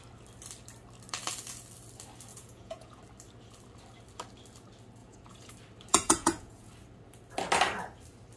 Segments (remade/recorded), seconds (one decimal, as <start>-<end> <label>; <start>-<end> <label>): 0.0-2.3 recorded; 2.3-3.0 remade; 3.0-5.0 recorded; 5.0-5.5 remade; 5.5-5.9 recorded; 5.9-6.7 remade; 6.7-8.4 recorded